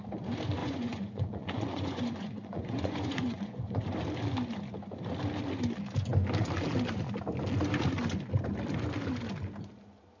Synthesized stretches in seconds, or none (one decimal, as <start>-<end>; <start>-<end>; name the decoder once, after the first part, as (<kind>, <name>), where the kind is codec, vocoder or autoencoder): 0.6-3.8 (vocoder, Vocos)

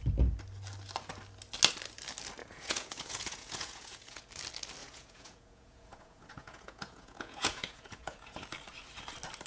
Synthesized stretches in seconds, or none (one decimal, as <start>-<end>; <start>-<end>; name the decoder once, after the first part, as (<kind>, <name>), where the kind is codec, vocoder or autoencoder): 2.4-4.3 (vocoder, Vocos); 4.8-8.4

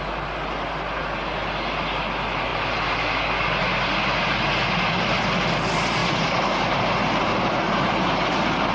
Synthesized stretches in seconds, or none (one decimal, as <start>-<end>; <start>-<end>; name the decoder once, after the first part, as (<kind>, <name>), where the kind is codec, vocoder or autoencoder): none

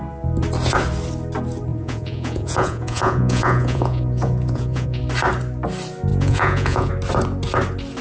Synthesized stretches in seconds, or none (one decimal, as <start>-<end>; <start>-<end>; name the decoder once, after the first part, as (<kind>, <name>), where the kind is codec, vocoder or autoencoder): 1.7-5.0 (vocoder, Vocos); 6.1-6.9

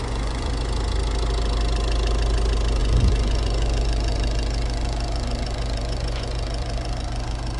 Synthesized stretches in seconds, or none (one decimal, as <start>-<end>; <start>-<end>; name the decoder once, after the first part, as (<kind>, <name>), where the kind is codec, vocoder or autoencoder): 0.0-0.5 (vocoder, Vocos); 2.8-7.6

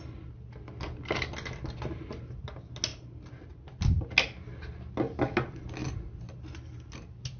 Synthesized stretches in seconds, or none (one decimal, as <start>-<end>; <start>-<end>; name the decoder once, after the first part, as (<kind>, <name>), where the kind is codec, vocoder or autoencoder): none

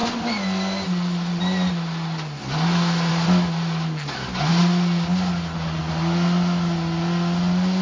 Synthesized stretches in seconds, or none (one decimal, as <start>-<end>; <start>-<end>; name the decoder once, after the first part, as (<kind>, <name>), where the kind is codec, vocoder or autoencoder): none